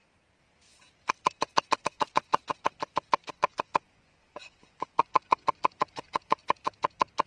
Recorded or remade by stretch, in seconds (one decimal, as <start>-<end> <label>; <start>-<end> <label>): 0.0-1.8 recorded; 1.8-2.3 remade; 2.3-3.3 recorded; 3.3-6.4 remade; 6.4-7.3 recorded